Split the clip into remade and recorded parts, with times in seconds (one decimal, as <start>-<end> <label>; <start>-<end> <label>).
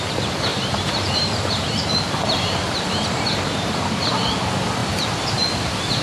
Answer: 0.0-0.5 recorded; 0.5-3.8 remade; 3.8-6.0 recorded